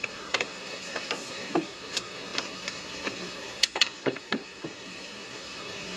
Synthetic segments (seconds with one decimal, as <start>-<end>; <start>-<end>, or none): 0.0-6.0